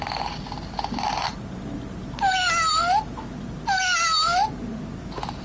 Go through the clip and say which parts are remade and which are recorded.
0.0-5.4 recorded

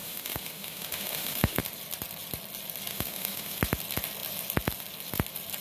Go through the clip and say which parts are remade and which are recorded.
0.0-1.6 remade; 1.6-2.9 recorded; 2.9-3.6 remade; 3.6-5.6 recorded

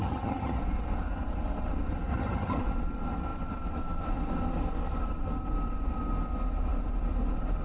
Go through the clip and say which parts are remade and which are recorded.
0.0-0.6 remade; 0.6-2.1 recorded; 2.1-2.6 remade; 2.6-7.6 recorded